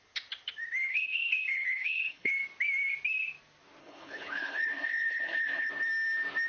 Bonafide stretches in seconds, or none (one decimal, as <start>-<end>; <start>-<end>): 0.0-0.9; 2.3-3.8; 5.7-6.5